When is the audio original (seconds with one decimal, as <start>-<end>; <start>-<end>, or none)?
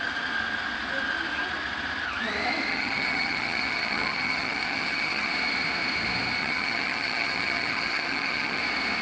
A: 0.0-2.7; 5.3-6.4; 8.6-9.0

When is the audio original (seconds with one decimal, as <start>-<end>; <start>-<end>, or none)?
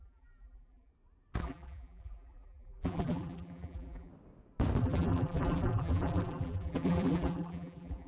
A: 0.9-1.4; 4.1-4.8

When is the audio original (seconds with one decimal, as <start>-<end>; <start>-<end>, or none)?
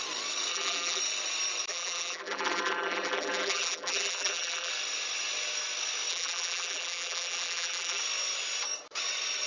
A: 0.0-0.5; 1.0-1.7; 4.7-6.1; 8.0-9.5